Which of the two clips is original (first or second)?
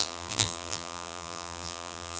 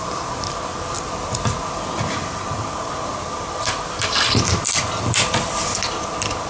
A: second